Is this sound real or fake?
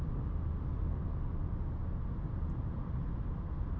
real